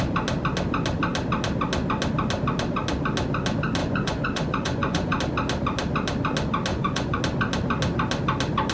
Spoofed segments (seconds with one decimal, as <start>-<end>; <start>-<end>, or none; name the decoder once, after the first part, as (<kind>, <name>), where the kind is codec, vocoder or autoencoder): 3.8-5.2 (vocoder, Vocos); 6.7-7.2